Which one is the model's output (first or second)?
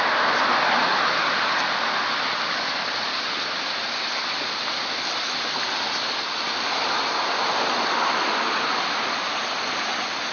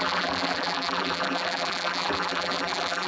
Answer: second